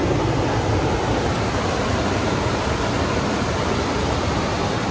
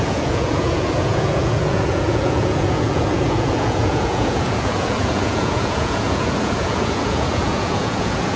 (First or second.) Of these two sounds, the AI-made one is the second